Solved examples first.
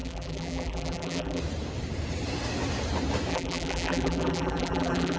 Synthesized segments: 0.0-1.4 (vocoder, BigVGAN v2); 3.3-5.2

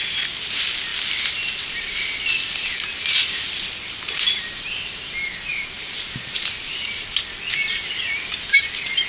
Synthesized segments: 5.5-6.9 (vocoder, BigVGAN v2)

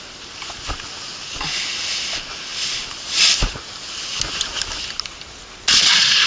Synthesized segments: none